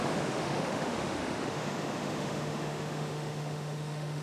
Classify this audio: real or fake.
fake